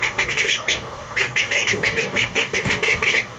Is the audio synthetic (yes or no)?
yes